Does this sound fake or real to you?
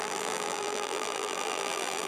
fake